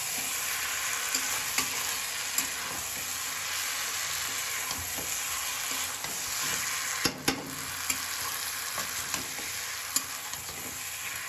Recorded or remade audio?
recorded